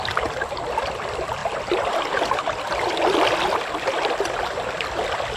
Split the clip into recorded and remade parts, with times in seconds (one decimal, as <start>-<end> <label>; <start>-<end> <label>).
0.0-5.4 recorded